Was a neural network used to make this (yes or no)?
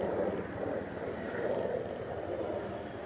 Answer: no